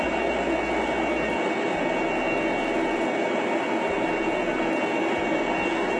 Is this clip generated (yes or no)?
no